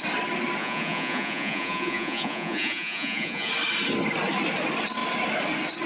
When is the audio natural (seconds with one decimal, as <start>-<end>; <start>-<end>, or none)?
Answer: 0.0-0.6; 3.5-5.9